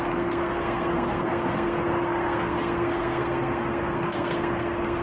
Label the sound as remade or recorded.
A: remade